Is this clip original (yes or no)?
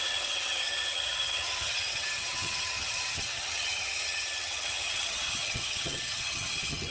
no